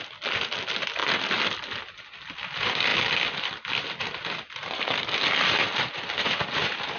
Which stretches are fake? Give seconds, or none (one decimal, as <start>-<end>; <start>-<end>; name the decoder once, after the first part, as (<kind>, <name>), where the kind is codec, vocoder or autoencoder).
none